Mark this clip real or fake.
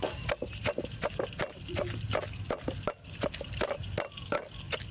real